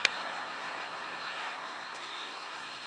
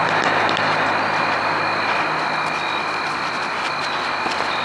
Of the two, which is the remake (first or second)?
first